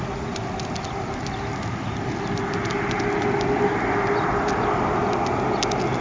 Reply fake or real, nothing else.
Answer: real